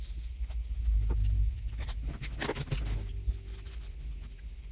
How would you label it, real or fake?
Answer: real